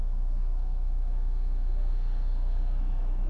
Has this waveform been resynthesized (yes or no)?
yes